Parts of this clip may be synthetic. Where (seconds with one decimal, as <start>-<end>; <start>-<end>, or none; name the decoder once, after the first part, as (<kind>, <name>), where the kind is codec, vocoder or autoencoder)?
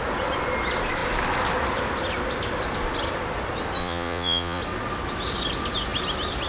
3.8-4.6 (vocoder, Vocos)